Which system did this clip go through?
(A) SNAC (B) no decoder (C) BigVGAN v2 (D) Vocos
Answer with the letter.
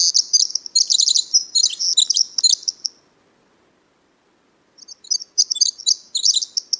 B